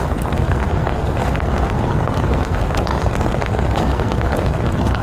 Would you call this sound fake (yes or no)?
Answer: yes